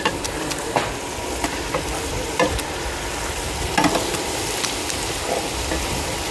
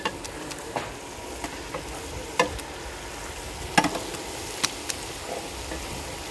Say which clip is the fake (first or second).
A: first